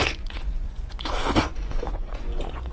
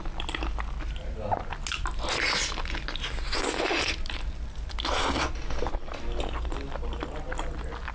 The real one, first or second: second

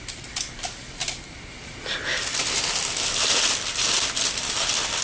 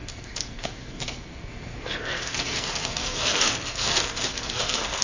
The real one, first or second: first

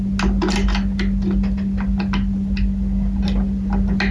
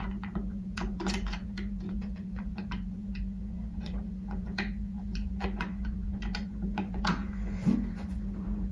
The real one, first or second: first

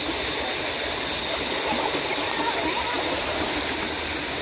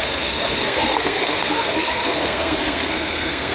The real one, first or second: first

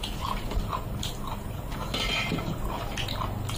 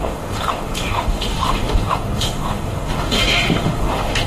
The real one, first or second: first